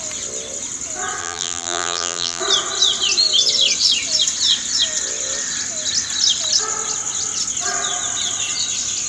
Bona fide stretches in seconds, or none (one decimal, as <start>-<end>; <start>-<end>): 0.0-1.2; 2.4-9.1